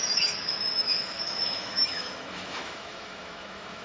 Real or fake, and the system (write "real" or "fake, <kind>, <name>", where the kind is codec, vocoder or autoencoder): fake, autoencoder, DAC-VAE